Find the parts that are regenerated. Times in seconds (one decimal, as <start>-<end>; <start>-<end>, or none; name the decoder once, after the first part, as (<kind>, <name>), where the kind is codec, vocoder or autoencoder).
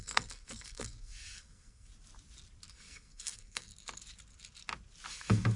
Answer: 0.0-1.9 (codec, SNAC); 2.7-3.7; 5.1-5.6